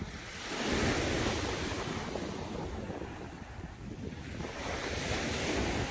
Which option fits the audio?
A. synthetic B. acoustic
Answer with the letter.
B